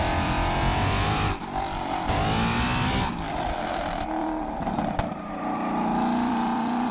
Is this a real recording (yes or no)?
no